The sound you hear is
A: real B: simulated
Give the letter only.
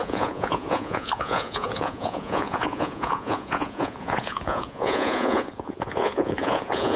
B